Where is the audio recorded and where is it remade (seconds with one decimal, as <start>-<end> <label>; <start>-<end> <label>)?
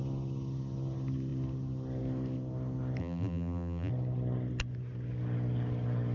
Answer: 0.0-3.0 recorded; 3.0-3.9 remade; 3.9-6.1 recorded